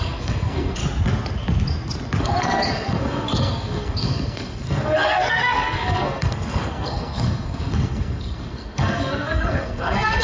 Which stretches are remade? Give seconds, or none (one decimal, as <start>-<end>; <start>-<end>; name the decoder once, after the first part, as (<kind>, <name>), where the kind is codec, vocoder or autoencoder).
0.0-0.8 (codec, SNAC); 2.2-10.2